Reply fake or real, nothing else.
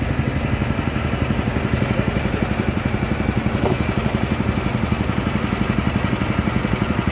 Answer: real